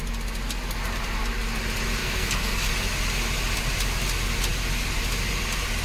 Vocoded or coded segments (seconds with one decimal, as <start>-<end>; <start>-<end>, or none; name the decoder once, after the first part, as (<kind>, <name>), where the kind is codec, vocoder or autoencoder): 2.0-2.7 (codec, SNAC)